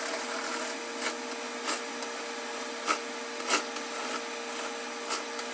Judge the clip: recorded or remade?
recorded